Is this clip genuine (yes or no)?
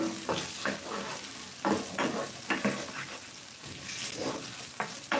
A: yes